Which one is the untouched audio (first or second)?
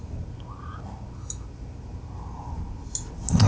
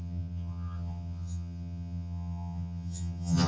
first